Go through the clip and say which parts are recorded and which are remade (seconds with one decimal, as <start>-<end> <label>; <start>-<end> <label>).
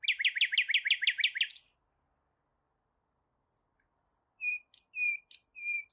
0.0-5.9 recorded